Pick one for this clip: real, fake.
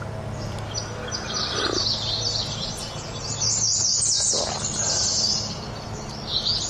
real